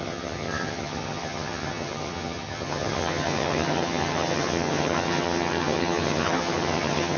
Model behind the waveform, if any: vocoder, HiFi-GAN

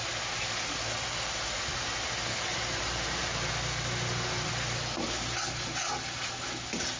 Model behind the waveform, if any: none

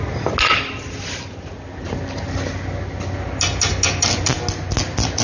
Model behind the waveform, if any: none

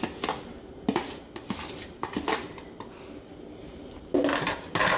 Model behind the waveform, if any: none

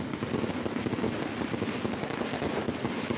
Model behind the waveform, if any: none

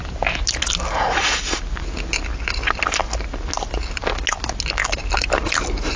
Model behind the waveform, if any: none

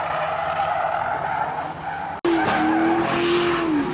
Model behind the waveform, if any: none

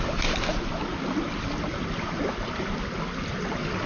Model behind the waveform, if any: none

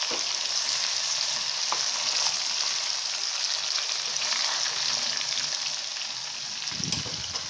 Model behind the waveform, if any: none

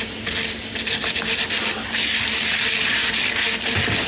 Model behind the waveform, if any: none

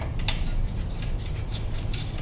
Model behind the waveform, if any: none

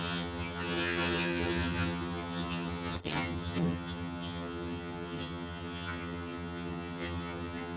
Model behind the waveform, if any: vocoder, HiFi-GAN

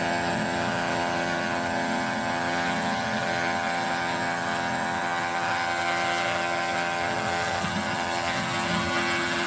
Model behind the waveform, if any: vocoder, HiFi-GAN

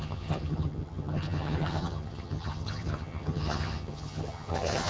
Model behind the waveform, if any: vocoder, HiFi-GAN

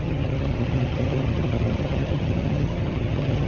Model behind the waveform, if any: vocoder, HiFi-GAN